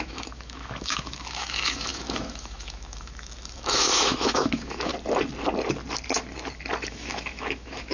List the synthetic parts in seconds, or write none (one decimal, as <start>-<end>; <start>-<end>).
0.0-4.9; 6.9-7.9